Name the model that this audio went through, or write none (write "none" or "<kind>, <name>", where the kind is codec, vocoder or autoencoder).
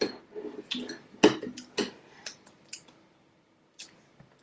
none